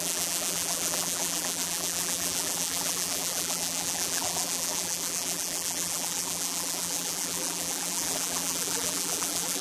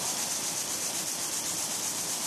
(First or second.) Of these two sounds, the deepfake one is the first